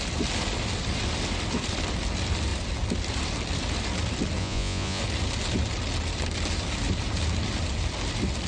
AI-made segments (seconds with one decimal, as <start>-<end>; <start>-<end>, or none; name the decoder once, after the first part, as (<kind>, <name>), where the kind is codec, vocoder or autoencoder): 4.4-5.0 (vocoder, Vocos)